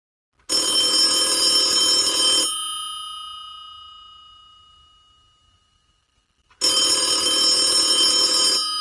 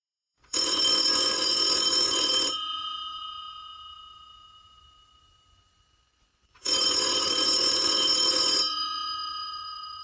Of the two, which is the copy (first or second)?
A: second